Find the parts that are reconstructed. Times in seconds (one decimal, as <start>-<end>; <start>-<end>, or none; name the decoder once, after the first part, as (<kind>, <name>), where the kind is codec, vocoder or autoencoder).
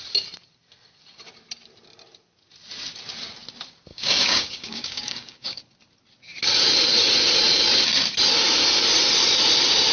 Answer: 3.9-5.6 (codec, DAC)